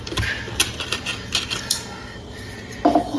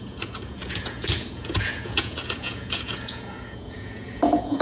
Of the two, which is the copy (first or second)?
second